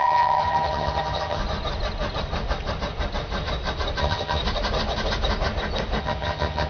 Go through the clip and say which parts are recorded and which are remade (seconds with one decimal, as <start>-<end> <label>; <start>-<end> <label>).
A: 0.0-1.4 remade; 1.4-4.0 recorded; 4.0-4.4 remade; 4.4-6.0 recorded; 6.0-6.7 remade